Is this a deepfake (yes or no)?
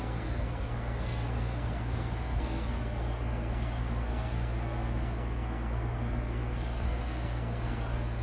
yes